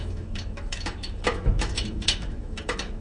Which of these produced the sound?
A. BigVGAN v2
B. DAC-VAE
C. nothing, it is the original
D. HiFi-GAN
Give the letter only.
B